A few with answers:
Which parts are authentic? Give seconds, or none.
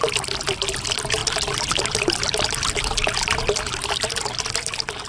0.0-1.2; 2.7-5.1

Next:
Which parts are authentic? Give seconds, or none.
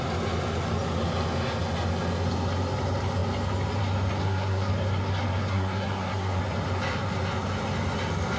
0.0-4.2; 4.7-5.5; 6.4-8.4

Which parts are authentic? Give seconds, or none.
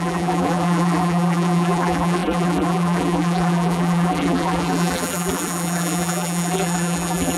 none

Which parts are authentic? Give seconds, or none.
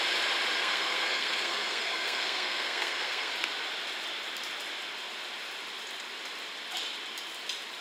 0.0-0.6; 3.3-7.8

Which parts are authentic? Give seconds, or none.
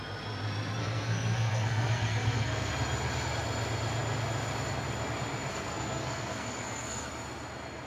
0.0-0.8; 2.7-5.5; 7.1-7.9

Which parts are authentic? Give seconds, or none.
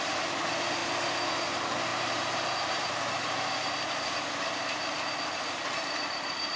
0.0-6.6